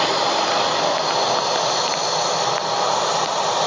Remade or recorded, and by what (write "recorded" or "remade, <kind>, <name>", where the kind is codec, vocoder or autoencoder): recorded